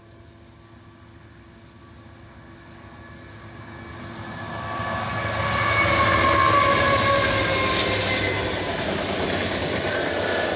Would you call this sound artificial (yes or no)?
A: no